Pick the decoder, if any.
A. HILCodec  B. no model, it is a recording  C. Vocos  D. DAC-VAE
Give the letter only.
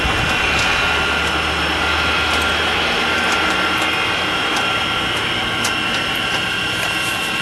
B